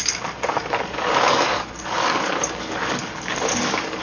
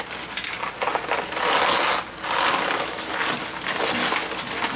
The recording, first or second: second